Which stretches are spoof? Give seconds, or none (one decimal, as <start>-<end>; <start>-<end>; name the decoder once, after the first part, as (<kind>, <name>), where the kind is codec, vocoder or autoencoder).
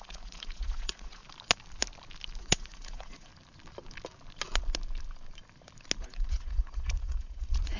0.0-1.2 (vocoder, Vocos); 2.4-3.3; 6.0-7.8